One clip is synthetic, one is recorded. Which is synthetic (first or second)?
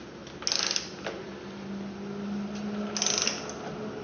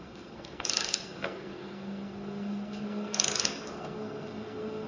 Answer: second